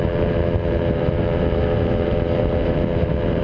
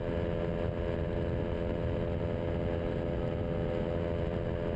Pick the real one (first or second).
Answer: second